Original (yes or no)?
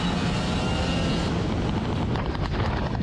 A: yes